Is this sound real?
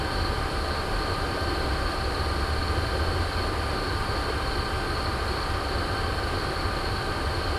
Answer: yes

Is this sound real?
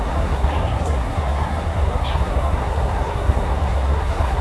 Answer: no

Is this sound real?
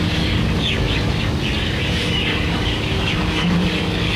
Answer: no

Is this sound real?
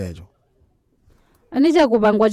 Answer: no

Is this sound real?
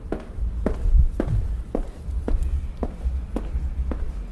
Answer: yes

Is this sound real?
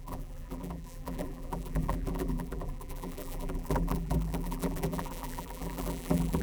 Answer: no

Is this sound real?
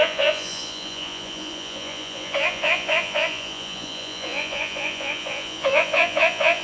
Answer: no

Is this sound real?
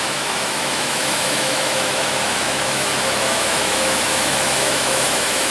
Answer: no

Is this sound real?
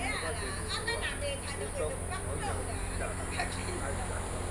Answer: yes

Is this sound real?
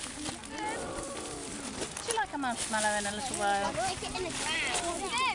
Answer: yes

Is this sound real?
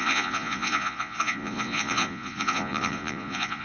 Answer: no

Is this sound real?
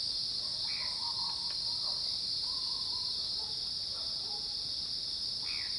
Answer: yes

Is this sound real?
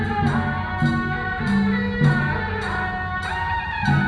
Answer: yes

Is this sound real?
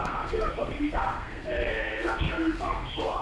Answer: no